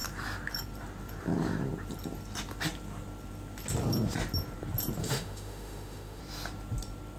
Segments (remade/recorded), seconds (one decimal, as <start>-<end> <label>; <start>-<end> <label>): 0.0-5.0 recorded; 5.0-6.2 remade; 6.2-7.2 recorded